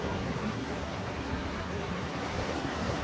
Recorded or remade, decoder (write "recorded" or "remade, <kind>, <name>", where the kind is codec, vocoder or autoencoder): remade, codec, SNAC